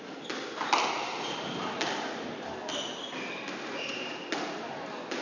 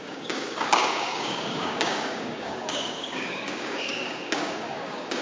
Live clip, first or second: first